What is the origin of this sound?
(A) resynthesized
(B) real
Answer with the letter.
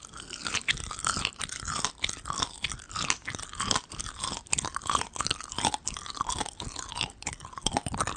B